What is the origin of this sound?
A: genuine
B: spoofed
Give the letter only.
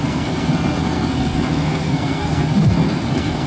B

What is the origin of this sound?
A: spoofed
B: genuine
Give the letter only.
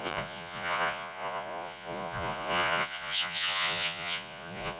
A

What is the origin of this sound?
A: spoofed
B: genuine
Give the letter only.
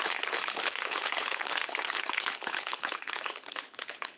A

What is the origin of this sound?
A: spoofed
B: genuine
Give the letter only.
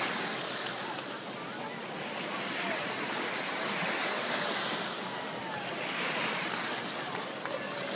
B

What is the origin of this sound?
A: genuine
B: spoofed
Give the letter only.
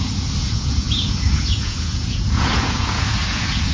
B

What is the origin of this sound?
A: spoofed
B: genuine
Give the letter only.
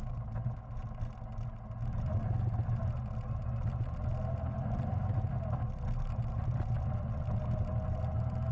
B